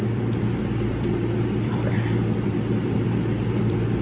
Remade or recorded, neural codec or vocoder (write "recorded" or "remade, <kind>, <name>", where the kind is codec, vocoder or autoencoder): remade, vocoder, BigVGAN v2